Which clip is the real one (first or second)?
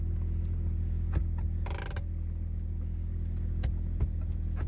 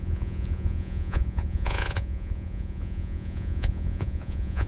first